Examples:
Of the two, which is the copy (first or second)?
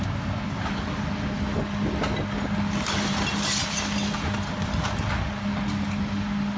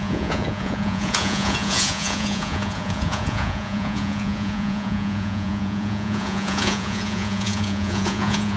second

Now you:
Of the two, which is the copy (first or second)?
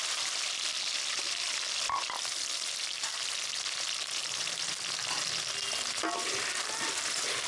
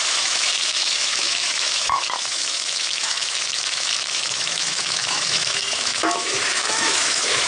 second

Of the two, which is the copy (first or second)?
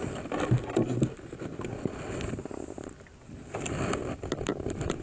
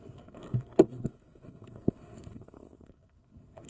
second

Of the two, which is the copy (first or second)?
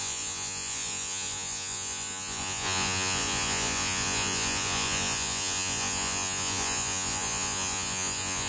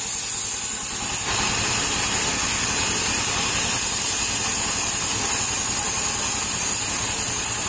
first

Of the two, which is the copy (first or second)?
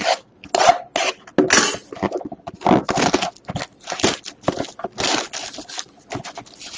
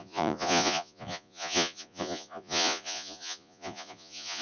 second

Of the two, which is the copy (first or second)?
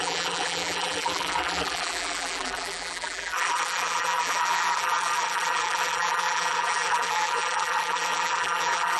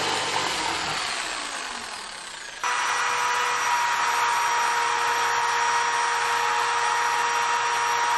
first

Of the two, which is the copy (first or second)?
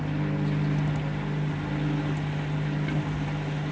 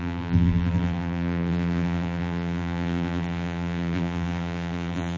second